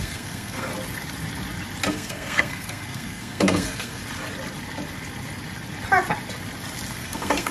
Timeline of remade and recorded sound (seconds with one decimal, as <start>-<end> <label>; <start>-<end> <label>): 0.0-0.7 remade; 0.7-1.9 recorded; 1.9-4.0 remade; 4.0-6.9 recorded; 6.9-7.5 remade